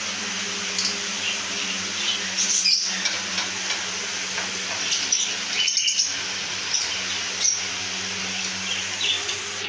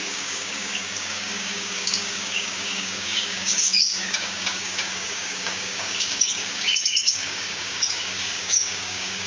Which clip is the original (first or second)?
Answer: first